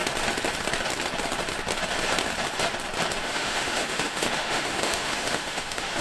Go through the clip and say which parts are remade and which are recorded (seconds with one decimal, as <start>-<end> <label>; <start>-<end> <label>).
0.0-3.2 recorded; 3.2-6.0 remade

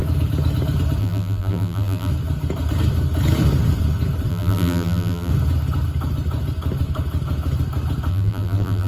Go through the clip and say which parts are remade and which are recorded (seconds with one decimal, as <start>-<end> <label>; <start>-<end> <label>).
0.0-1.0 recorded; 1.0-2.1 remade; 2.1-4.3 recorded; 4.3-5.3 remade; 5.3-8.1 recorded; 8.1-8.9 remade

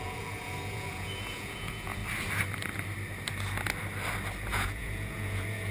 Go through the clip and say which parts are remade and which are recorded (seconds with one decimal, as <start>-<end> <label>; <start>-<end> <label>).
0.0-2.0 remade; 2.0-4.5 recorded; 4.5-5.7 remade